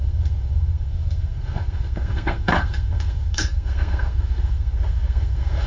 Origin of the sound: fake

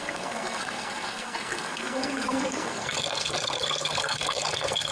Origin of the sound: fake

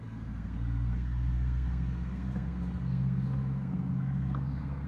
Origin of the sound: fake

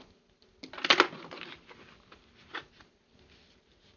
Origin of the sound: real